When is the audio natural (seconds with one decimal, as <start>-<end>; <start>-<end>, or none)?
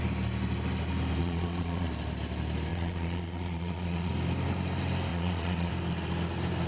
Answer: 0.0-1.2; 1.9-2.7; 4.1-5.1; 5.7-6.7